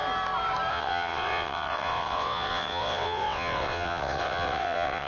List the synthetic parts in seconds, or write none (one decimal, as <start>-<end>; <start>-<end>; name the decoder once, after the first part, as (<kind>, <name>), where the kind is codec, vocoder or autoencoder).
0.7-5.1 (vocoder, WaveNeXt)